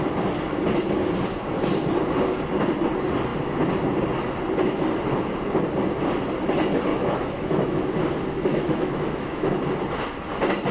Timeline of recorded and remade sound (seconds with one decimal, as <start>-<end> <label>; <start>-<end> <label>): 0.0-6.9 recorded; 6.9-7.8 remade; 7.8-8.5 recorded; 8.5-9.5 remade; 9.5-10.7 recorded